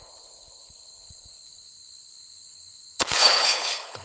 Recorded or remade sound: remade